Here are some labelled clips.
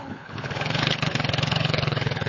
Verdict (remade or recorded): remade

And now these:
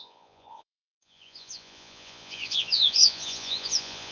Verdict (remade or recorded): remade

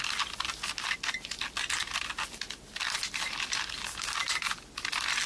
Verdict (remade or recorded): recorded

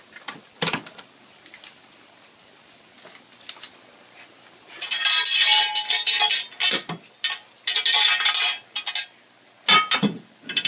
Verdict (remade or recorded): recorded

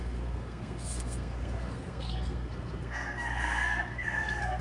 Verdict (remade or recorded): remade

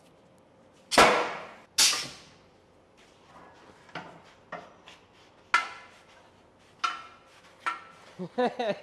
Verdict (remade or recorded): recorded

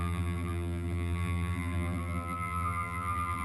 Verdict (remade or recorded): remade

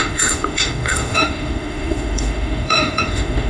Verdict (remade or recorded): remade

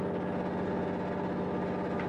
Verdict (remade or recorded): recorded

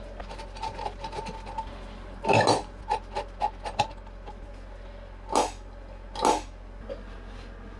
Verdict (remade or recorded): recorded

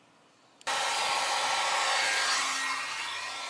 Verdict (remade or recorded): recorded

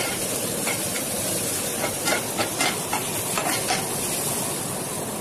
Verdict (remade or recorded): recorded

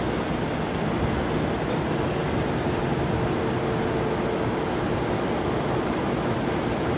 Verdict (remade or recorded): recorded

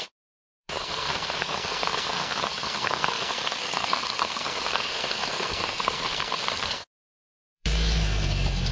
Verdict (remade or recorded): remade